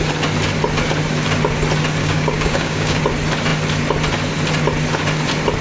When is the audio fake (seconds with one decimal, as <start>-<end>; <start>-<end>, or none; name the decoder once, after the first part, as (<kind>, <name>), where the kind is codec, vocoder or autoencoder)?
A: 2.0-3.0 (codec, DAC)